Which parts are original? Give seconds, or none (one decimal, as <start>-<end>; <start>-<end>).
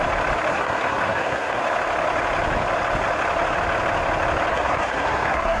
0.0-0.5; 1.6-4.5